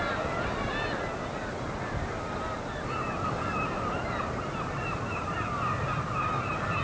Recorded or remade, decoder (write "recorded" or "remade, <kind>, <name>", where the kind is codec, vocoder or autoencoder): remade, vocoder, BigVGAN v2